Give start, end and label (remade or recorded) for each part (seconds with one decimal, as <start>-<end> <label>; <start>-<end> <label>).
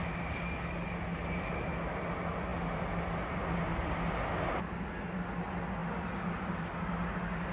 0.0-7.5 recorded